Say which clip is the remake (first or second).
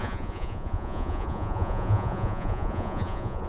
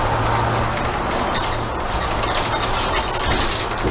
first